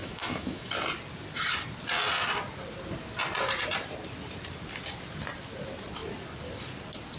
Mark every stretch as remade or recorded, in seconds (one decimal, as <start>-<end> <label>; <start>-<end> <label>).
0.0-0.7 remade; 0.7-7.2 recorded

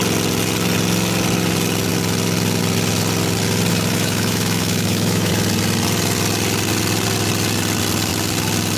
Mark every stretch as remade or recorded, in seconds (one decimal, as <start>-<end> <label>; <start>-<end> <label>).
0.0-3.7 recorded; 3.7-5.3 remade; 5.3-8.8 recorded

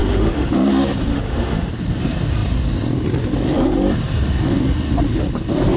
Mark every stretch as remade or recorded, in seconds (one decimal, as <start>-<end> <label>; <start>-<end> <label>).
0.0-0.5 remade; 0.5-1.1 recorded; 1.1-1.7 remade; 1.7-5.8 recorded

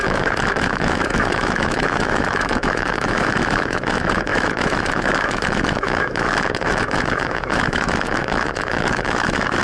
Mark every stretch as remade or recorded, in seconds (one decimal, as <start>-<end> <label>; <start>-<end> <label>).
0.0-9.6 remade

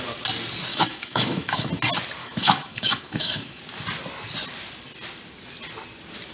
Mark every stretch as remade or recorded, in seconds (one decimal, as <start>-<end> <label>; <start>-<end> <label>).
0.0-0.7 recorded; 0.7-1.7 remade; 1.7-2.2 recorded; 2.2-3.6 remade; 3.6-6.3 recorded